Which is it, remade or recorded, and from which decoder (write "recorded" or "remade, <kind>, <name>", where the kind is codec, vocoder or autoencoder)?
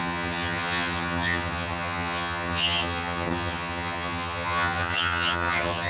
remade, vocoder, HiFi-GAN